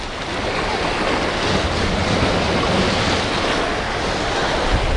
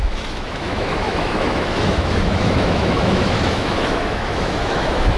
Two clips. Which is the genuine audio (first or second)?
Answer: first